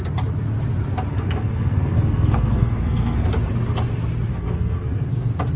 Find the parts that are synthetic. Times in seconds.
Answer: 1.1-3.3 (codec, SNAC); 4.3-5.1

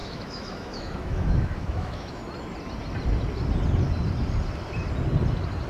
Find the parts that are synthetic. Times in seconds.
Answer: 0.0-2.2 (autoencoder, DAC-VAE)

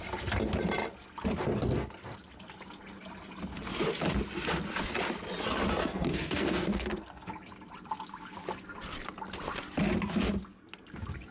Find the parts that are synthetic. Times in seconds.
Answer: 5.8-7.3 (codec, SNAC)

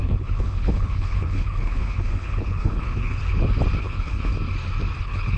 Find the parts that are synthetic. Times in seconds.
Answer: 0.0-3.2 (codec, HILCodec); 3.8-4.3; 5.0-5.4

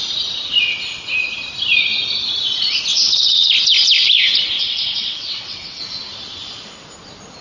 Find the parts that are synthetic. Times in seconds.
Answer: 2.9-3.5 (vocoder, WaveNeXt); 4.6-5.8

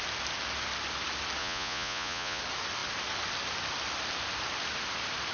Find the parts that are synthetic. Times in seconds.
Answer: 1.4-2.4 (vocoder, Vocos)